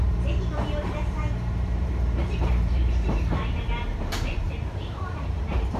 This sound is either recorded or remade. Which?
remade